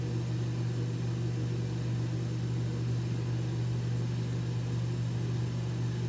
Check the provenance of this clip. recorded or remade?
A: recorded